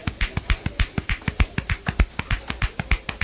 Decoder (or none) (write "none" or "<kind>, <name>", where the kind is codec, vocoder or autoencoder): none